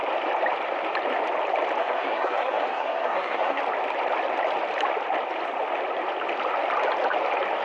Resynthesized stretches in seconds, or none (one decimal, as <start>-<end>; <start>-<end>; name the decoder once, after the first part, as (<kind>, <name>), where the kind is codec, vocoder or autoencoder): 1.8-3.6 (codec, SNAC)